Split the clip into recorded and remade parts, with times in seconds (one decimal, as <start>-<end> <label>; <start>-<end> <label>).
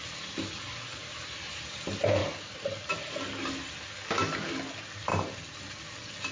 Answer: 0.0-1.0 recorded; 1.0-1.8 remade; 1.8-5.1 recorded; 5.1-5.6 remade; 5.6-6.3 recorded